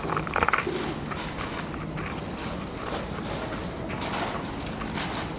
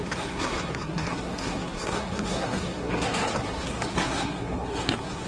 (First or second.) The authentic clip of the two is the first